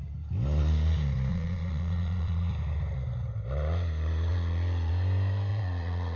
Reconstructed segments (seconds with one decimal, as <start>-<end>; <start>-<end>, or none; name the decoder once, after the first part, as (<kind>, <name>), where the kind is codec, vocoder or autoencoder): 1.3-2.5 (vocoder, Vocos); 4.3-4.9; 5.5-6.2